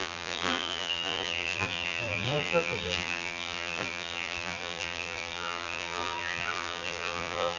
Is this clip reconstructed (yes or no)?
yes